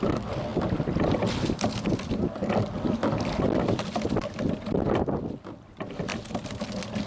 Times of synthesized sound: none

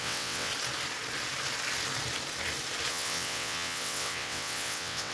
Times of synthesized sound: 0.0-0.5 (vocoder, WaveNeXt); 2.9-5.1

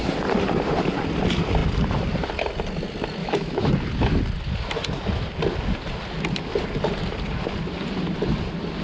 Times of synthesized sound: 3.2-3.7 (autoencoder, DAC-VAE)

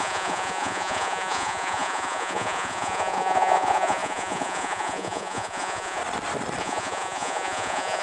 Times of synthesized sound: 0.0-6.0 (vocoder, Vocos); 6.6-8.0

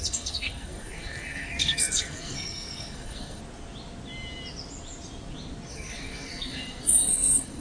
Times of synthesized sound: 0.0-3.4 (codec, SNAC); 5.7-7.6

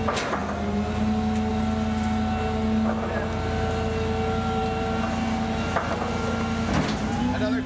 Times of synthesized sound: none

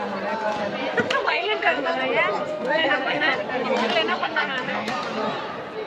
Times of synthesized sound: 1.2-2.0 (codec, SNAC); 2.4-3.4; 4.1-4.9

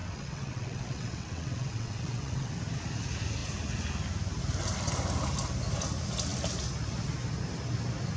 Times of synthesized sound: 0.0-2.5 (vocoder, WaveNeXt)